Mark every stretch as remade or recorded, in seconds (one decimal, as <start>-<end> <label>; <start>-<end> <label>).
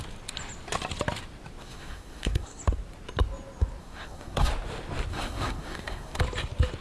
0.0-1.6 recorded; 1.6-2.6 remade; 2.6-3.8 recorded; 3.8-4.5 remade; 4.5-5.1 recorded; 5.1-6.2 remade; 6.2-6.8 recorded